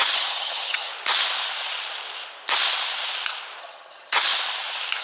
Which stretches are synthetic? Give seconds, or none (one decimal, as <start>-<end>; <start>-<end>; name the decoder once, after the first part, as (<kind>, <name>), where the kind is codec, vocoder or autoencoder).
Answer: 0.0-0.9 (vocoder, HiFi-GAN); 3.6-4.3